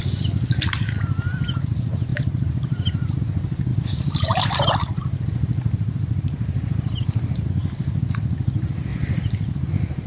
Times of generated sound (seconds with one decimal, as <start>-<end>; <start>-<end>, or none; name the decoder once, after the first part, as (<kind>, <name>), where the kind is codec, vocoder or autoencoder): 2.1-3.2 (vocoder, BigVGAN v2); 3.7-7.5; 8.9-9.7